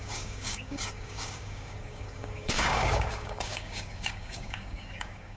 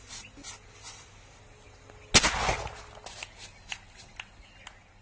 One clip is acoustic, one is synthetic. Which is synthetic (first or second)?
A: first